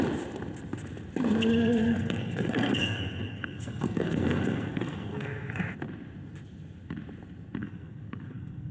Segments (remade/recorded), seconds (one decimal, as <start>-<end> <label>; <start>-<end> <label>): 0.0-1.9 recorded; 1.9-5.6 remade; 5.6-7.6 recorded; 7.6-8.7 remade